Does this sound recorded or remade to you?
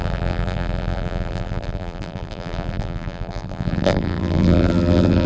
remade